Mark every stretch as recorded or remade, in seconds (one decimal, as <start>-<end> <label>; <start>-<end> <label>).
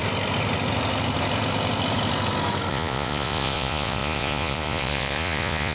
0.0-2.7 recorded; 2.7-5.7 remade